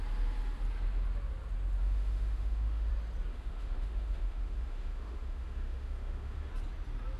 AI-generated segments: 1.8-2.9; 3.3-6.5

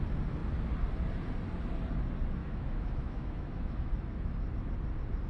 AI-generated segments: 2.4-3.9

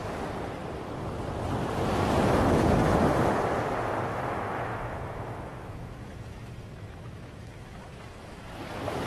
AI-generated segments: 4.1-8.5